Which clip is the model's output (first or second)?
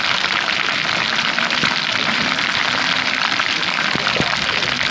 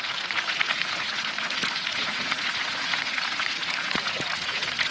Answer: second